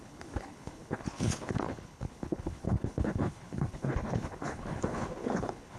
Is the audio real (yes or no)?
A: no